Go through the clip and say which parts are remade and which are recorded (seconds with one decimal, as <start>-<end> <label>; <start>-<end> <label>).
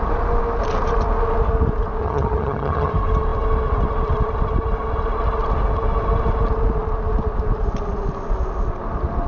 0.0-2.0 recorded; 2.0-2.9 remade; 2.9-9.3 recorded